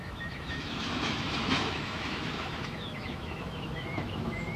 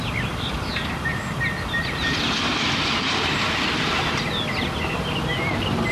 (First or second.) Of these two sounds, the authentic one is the second